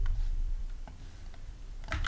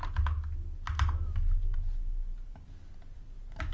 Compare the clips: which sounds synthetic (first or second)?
first